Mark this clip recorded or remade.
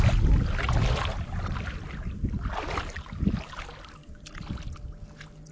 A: recorded